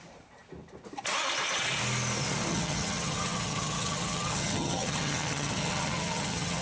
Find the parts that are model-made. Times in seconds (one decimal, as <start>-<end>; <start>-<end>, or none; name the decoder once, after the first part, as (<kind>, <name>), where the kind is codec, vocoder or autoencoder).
2.5-6.6 (vocoder, HiFi-GAN)